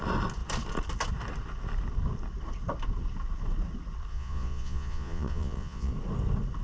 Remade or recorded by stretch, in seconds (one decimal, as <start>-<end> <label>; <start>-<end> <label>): 0.0-4.1 recorded; 4.1-5.9 remade; 5.9-6.6 recorded

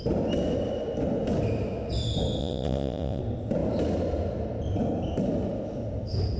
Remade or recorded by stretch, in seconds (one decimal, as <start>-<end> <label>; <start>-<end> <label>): 0.0-2.4 recorded; 2.4-3.2 remade; 3.2-6.4 recorded

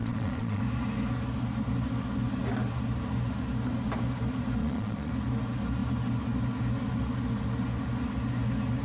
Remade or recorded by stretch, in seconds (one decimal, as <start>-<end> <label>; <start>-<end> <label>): 0.0-0.6 remade; 0.6-4.6 recorded; 4.6-5.1 remade; 5.1-8.8 recorded